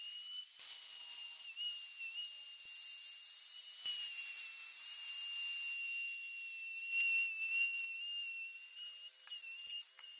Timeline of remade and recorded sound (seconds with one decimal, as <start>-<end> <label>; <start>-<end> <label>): 0.0-10.2 recorded